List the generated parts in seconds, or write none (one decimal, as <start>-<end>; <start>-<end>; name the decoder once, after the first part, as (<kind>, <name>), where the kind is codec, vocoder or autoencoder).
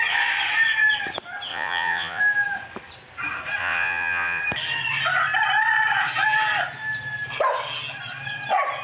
1.5-2.2 (vocoder, Vocos); 3.6-4.4